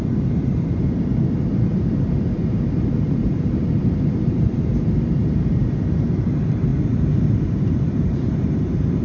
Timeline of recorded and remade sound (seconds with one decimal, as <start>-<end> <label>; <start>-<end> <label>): 0.0-6.7 remade; 6.7-7.4 recorded; 7.4-9.0 remade